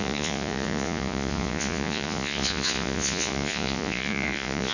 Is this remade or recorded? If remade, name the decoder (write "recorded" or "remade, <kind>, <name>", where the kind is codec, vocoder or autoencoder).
remade, vocoder, Vocos